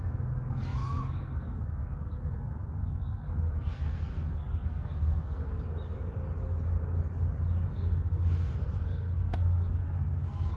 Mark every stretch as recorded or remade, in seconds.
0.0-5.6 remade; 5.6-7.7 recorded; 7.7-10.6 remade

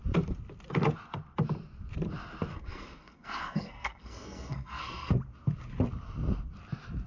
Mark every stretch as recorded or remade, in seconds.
0.0-2.5 recorded; 2.5-5.1 remade; 5.1-7.1 recorded

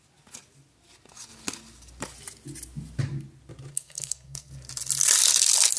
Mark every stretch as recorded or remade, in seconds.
0.0-3.7 recorded; 3.7-4.5 remade; 4.5-5.8 recorded

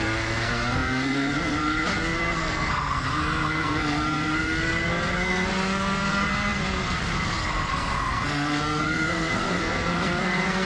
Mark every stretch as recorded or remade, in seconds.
0.0-10.7 remade

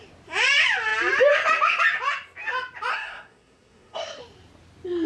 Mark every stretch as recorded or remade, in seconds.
0.0-2.9 recorded; 2.9-4.2 remade; 4.2-5.1 recorded